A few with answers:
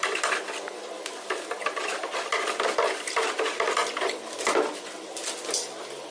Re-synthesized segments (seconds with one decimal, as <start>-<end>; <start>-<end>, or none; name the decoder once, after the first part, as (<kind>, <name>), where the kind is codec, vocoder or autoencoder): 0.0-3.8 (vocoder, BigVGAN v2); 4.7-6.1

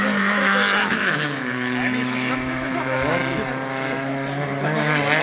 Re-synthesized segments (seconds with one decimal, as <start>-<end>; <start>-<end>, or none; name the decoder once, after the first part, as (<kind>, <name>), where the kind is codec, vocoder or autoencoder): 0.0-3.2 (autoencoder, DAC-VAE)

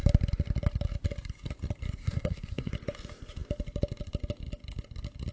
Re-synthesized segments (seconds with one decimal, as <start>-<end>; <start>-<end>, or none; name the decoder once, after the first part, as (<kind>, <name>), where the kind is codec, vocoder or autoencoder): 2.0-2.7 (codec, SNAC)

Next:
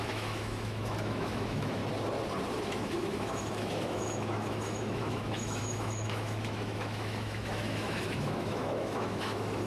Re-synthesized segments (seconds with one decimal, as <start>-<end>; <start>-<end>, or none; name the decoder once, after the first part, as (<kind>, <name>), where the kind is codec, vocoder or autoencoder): 0.0-1.8 (autoencoder, DAC-VAE); 2.5-9.7

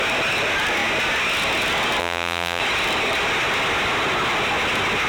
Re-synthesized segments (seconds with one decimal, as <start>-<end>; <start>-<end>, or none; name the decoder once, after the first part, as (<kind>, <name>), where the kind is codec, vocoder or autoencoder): 2.0-2.6 (vocoder, BigVGAN v2)

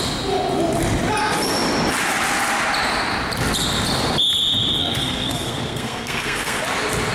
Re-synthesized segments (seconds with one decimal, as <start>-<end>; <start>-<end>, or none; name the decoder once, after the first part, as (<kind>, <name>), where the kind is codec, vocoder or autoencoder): 4.8-6.6 (codec, SNAC)

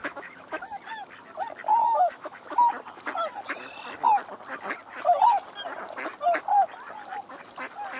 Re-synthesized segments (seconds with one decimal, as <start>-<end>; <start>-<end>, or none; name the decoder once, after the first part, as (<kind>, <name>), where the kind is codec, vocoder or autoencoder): 0.0-0.6 (autoencoder, DAC-VAE); 1.8-2.7

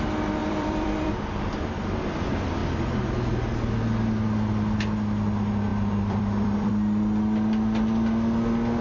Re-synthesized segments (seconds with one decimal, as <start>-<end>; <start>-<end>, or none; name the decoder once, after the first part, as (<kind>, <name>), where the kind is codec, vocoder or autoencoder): 0.4-1.1 (vocoder, BigVGAN v2); 5.7-6.7